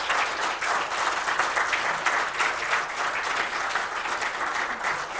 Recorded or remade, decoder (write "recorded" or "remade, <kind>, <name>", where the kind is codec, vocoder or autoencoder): recorded